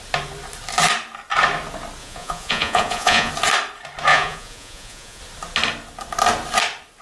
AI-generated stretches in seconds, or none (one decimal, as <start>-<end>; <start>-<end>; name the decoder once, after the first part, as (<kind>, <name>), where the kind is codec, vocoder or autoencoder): 2.0-3.3 (vocoder, Vocos); 4.1-5.2